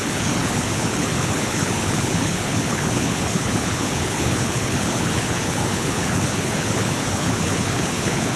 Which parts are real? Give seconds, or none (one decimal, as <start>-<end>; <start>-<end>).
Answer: none